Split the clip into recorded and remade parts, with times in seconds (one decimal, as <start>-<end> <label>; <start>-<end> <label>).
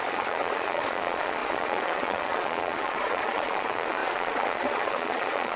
0.0-5.6 remade